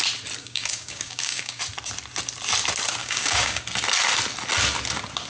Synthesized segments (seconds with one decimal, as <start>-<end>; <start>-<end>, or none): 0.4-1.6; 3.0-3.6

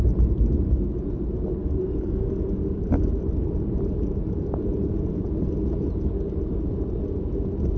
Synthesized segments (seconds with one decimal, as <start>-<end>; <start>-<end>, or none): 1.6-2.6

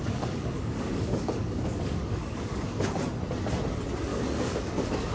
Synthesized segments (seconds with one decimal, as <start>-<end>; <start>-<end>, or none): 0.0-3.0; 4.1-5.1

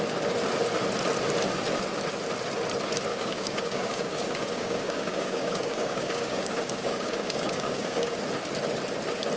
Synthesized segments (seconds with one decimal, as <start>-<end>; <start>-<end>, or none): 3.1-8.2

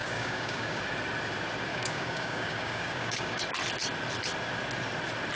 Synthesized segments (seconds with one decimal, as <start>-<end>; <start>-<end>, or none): 0.0-0.8; 1.7-3.4

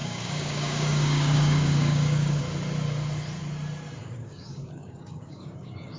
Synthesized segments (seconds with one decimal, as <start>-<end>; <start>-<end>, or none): 0.0-2.4; 4.0-6.0

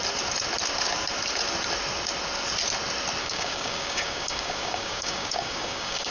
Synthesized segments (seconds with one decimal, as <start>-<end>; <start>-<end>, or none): 3.2-6.1